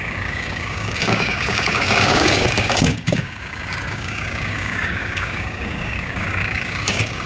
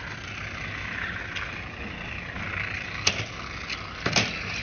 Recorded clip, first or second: second